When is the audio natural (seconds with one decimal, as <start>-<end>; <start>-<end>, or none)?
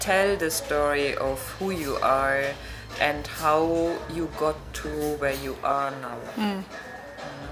0.0-4.6; 5.2-5.7; 6.3-7.5